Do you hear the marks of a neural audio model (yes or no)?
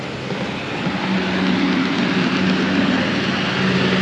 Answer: no